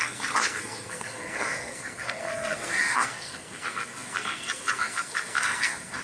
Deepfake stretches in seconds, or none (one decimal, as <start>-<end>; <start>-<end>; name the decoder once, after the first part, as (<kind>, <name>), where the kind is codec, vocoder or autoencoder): 0.0-6.0 (codec, SNAC)